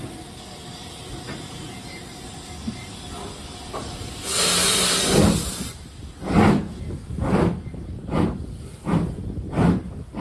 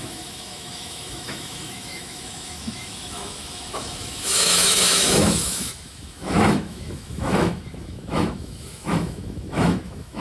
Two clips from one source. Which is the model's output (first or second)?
second